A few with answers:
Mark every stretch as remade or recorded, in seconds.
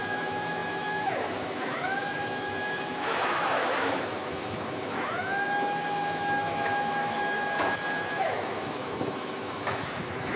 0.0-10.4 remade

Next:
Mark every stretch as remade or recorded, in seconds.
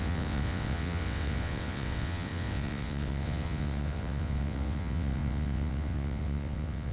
0.0-6.9 remade